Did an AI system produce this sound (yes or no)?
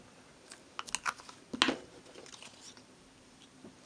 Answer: no